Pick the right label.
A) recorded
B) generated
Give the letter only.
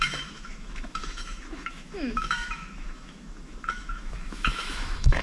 B